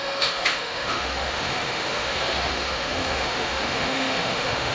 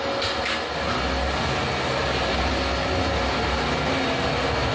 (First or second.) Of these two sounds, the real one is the second